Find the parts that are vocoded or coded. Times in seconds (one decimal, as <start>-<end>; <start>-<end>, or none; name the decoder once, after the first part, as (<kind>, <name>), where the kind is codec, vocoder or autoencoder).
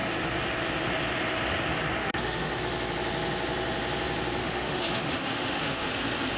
2.0-2.6 (autoencoder, DAC-VAE); 4.4-5.9